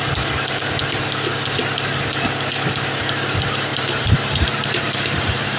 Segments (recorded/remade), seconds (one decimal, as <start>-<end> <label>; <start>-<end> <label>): 0.0-3.7 recorded; 3.7-5.6 remade